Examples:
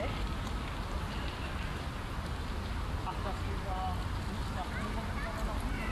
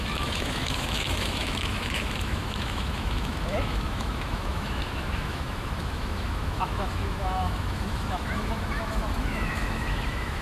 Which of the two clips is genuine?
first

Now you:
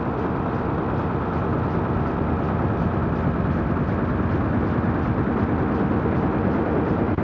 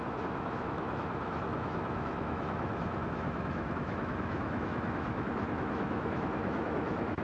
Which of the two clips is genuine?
first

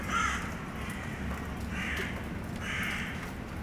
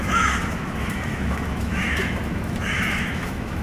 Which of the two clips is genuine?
first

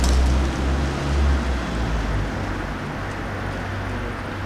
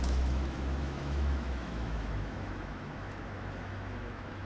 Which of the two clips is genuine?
first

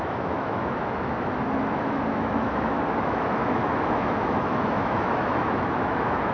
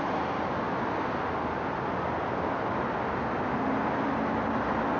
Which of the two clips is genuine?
second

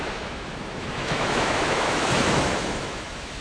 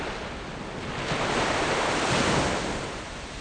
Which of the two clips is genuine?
second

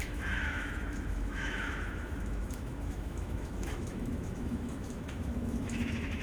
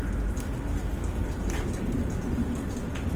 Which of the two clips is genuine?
second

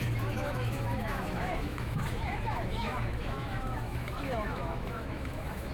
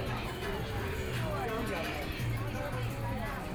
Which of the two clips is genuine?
second